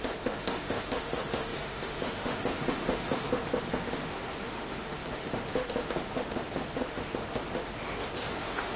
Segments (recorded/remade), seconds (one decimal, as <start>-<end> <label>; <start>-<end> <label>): 0.0-8.8 remade